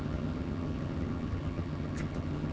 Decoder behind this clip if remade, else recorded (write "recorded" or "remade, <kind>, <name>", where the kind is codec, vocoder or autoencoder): remade, vocoder, HiFi-GAN